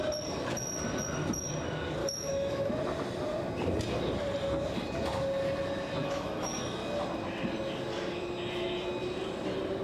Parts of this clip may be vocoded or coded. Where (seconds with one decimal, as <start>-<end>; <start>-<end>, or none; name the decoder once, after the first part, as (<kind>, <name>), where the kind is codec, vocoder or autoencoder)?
2.0-2.7 (autoencoder, DAC-VAE); 6.0-6.6